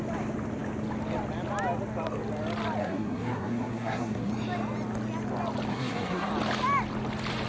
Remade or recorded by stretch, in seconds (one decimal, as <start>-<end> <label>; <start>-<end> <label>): 0.0-2.8 recorded; 2.8-4.3 remade; 4.3-5.7 recorded; 5.7-6.3 remade; 6.3-7.5 recorded